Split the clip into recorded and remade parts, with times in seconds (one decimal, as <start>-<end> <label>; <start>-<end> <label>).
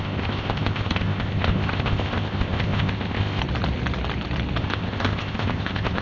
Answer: 0.0-3.4 remade; 3.4-4.6 recorded; 4.6-6.0 remade